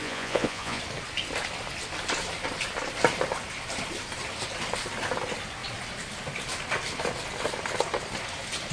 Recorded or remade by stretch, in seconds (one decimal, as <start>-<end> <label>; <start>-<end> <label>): 0.0-0.8 remade; 0.8-8.7 recorded